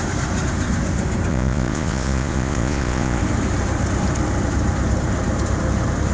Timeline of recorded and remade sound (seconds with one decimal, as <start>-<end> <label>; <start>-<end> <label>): 0.0-1.3 recorded; 1.3-3.2 remade; 3.2-6.1 recorded